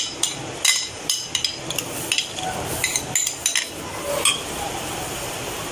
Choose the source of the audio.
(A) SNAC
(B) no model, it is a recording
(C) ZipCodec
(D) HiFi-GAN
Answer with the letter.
B